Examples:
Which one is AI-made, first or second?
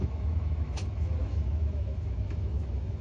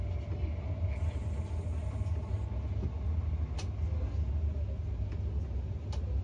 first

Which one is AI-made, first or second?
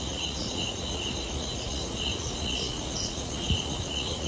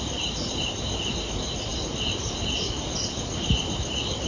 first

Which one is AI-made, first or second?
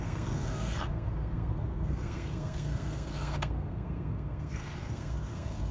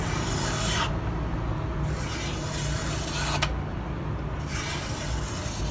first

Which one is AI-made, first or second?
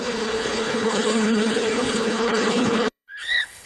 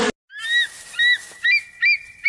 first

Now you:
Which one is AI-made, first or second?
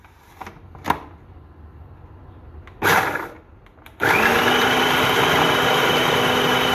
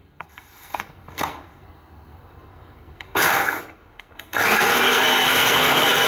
second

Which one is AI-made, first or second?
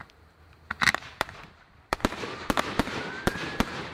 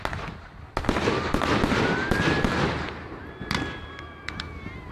first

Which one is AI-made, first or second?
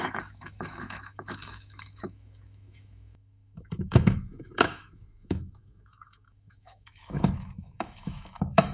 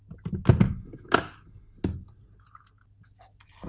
first